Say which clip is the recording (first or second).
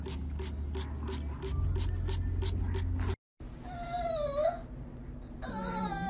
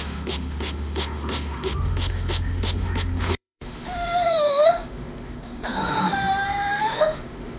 first